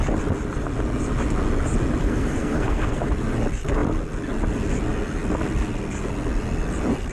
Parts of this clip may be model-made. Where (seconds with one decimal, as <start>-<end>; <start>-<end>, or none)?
2.0-3.1